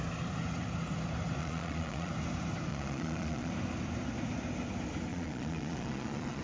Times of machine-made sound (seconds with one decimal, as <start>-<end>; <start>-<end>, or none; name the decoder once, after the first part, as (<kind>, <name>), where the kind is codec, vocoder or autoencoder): 1.4-2.1 (vocoder, Vocos); 2.7-3.5; 5.1-6.4